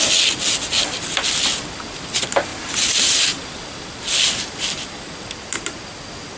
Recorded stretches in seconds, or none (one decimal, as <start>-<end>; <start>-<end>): 0.0-6.4